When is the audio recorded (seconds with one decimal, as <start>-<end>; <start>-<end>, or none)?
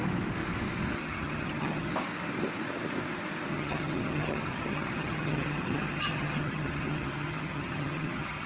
0.0-1.0; 1.9-3.5